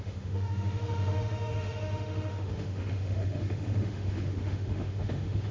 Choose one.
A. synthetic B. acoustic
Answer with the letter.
A